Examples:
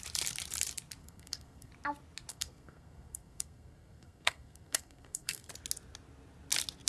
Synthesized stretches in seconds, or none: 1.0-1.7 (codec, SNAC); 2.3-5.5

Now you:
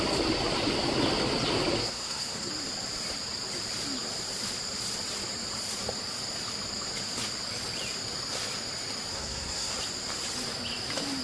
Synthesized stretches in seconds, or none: 1.8-2.5 (codec, SNAC); 9.1-9.7

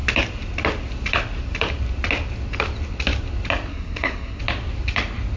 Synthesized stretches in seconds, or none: 3.7-4.4 (codec, SNAC)

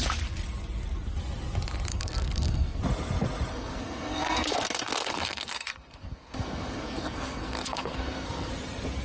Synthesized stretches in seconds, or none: 1.9-2.8 (codec, SNAC); 3.5-8.5

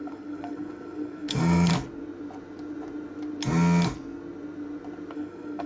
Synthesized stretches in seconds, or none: 0.0-1.7 (codec, SNAC); 5.1-5.7

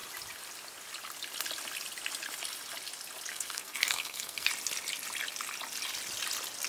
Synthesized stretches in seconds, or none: 3.3-4.5 (codec, SNAC)

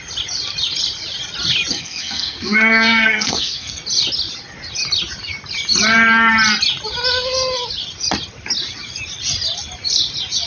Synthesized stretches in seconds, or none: 1.7-3.8 (codec, SNAC)